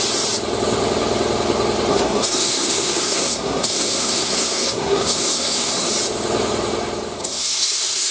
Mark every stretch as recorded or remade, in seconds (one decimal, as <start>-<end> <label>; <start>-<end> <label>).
0.0-1.9 recorded; 1.9-5.9 remade; 5.9-7.2 recorded; 7.2-8.1 remade